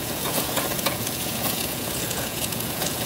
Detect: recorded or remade remade